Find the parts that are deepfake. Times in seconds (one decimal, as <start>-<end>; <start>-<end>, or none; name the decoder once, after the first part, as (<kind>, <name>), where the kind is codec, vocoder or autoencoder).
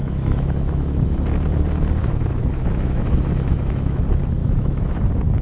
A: 0.0-1.0 (autoencoder, DAC-VAE); 2.0-4.0; 4.4-5.0